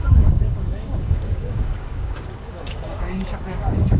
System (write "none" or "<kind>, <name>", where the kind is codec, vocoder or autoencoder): codec, DAC